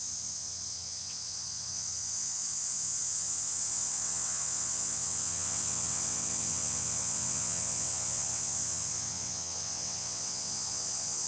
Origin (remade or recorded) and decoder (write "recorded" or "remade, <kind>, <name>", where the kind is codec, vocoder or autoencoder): remade, vocoder, WaveNeXt